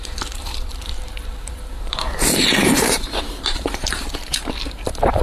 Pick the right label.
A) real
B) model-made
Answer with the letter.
B